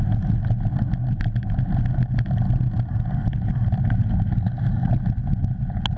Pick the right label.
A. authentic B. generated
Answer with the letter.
A